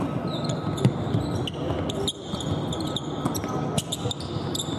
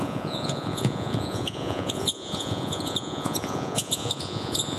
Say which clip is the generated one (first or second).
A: second